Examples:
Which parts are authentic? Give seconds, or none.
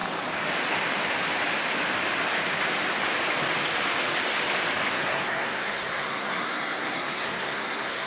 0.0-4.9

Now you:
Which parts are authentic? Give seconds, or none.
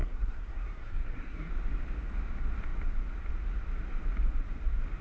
1.5-5.0